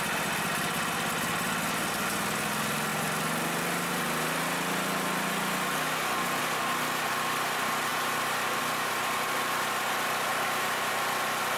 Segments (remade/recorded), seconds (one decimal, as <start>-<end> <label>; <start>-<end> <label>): 0.0-11.6 recorded